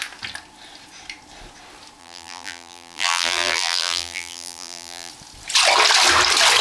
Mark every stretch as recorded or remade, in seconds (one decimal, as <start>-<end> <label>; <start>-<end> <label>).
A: 0.0-2.0 recorded; 2.0-5.1 remade; 5.1-6.6 recorded